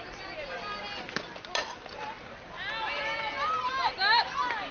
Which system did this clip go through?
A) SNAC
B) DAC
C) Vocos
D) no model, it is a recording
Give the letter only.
D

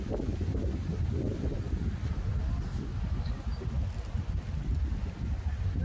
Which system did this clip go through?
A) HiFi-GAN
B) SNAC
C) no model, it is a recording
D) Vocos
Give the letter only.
C